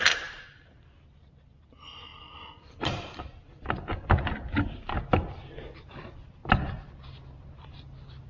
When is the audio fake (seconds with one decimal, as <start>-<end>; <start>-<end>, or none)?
2.1-5.0; 6.4-6.9